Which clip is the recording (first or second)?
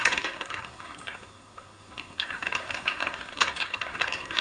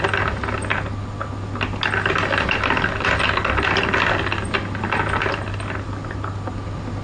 second